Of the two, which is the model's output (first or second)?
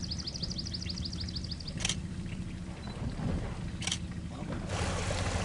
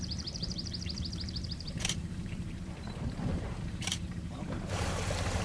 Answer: second